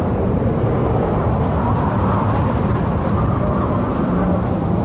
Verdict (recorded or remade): recorded